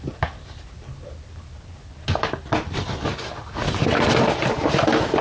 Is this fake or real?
real